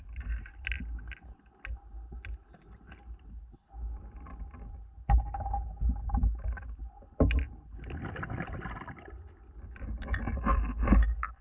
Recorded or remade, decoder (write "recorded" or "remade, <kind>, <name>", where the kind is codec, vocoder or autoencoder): recorded